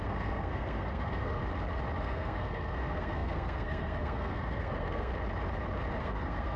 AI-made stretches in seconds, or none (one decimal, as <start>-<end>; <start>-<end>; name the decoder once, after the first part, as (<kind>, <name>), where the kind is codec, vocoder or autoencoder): 0.0-1.4 (codec, SNAC); 2.0-5.1; 6.0-6.6